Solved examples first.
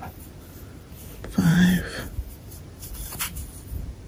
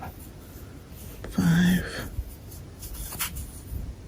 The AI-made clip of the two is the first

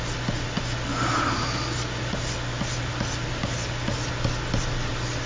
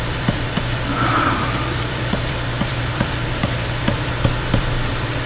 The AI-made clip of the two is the second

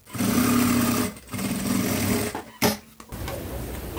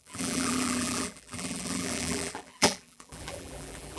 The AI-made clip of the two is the second